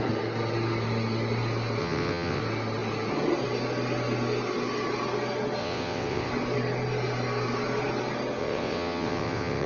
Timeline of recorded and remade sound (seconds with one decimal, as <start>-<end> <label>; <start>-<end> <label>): 0.0-1.8 recorded; 1.8-2.4 remade; 2.4-5.6 recorded; 5.6-6.3 remade; 6.3-8.4 recorded; 8.4-9.7 remade